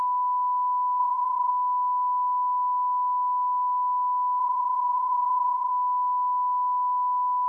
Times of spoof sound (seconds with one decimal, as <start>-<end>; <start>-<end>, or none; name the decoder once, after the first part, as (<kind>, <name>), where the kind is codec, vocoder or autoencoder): 1.0-1.5 (vocoder, Vocos); 4.4-5.7